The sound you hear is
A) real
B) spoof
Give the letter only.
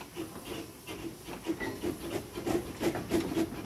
A